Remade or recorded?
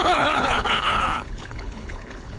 remade